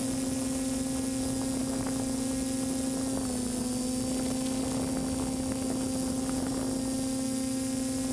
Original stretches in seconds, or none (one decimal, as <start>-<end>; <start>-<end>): 0.0-8.1